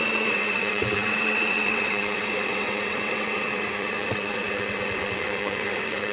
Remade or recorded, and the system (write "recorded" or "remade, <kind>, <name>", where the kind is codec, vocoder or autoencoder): remade, vocoder, WaveNeXt